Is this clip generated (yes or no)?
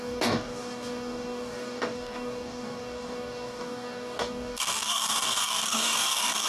yes